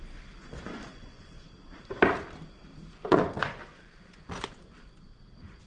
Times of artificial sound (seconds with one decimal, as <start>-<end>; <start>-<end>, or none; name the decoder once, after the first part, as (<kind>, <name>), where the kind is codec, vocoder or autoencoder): 0.4-1.5 (vocoder, Vocos); 3.0-4.3